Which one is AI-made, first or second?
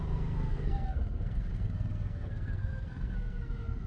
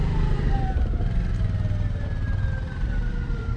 first